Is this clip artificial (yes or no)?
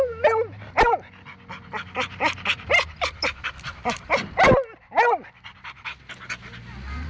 no